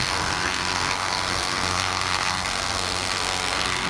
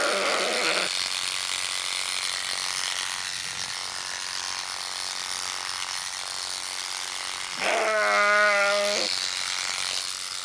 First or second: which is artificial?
first